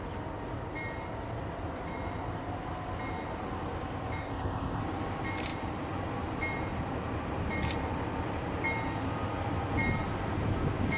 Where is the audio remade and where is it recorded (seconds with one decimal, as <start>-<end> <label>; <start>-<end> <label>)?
0.0-4.2 recorded; 4.2-4.8 remade; 4.8-11.0 recorded